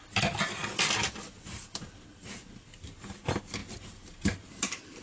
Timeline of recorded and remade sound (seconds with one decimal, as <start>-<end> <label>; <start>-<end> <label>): 0.0-5.0 recorded